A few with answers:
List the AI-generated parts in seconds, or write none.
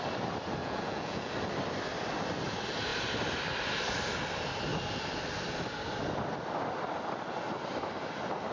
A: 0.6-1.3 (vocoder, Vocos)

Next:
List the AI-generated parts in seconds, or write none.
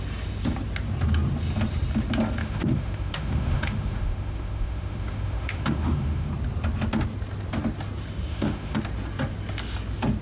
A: 2.4-6.3 (autoencoder, DAC-VAE); 8.3-8.8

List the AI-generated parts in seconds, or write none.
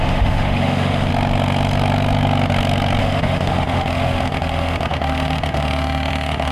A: 0.0-1.1 (autoencoder, DAC-VAE); 3.0-6.5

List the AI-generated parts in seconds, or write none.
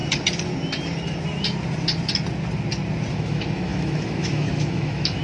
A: 3.1-5.2 (autoencoder, DAC-VAE)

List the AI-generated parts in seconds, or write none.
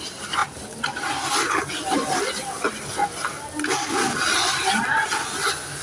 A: none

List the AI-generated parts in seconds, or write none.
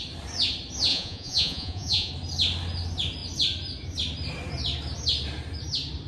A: 0.9-2.1 (vocoder, Vocos)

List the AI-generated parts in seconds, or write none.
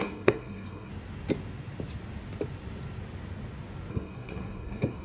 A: 0.0-0.9 (codec, SNAC); 3.9-5.0